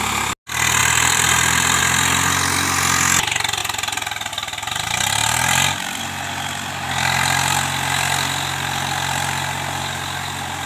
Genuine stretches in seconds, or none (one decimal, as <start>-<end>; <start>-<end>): 0.0-0.8; 1.8-10.7